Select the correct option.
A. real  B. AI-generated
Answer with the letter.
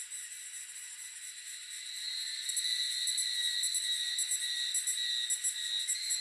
A